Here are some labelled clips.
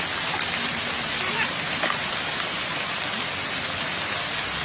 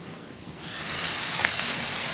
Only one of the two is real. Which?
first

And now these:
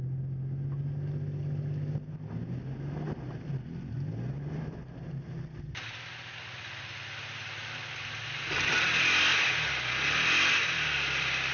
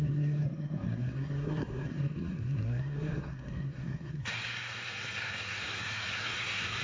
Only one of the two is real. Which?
first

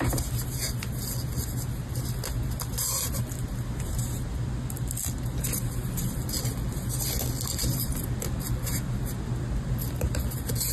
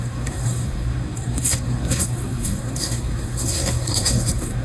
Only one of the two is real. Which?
first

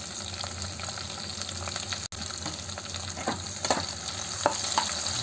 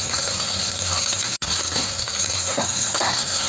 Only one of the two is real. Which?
first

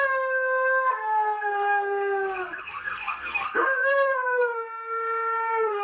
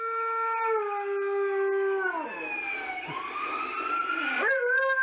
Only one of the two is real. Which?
second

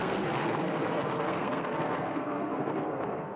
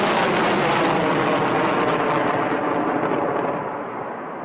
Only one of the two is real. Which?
second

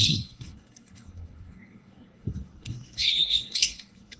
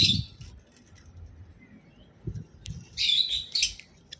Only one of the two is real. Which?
second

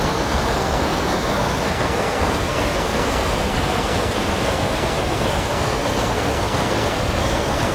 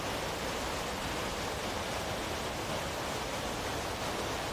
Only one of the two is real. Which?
second